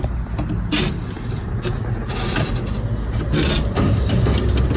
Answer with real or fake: real